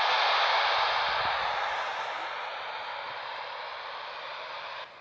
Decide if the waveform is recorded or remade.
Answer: recorded